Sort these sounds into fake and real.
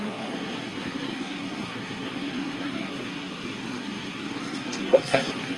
fake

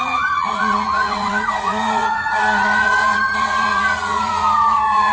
fake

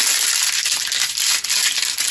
real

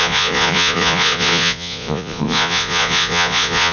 fake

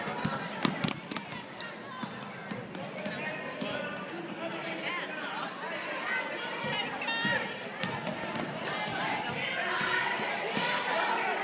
real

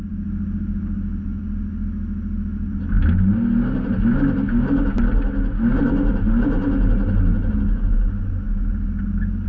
real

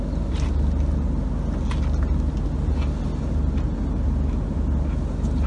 real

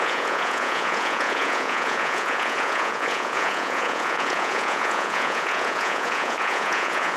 fake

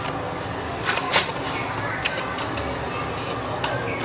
real